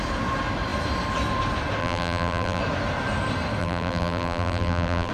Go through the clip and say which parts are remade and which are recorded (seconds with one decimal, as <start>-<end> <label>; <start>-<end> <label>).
0.0-1.8 recorded; 1.8-2.6 remade; 2.6-3.6 recorded; 3.6-5.1 remade